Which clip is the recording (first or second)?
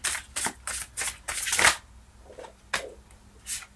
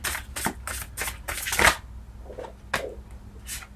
second